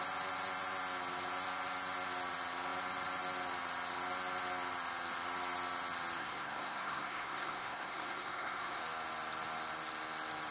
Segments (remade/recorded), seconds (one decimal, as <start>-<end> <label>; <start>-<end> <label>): 0.0-6.2 recorded; 6.2-8.8 remade; 8.8-10.5 recorded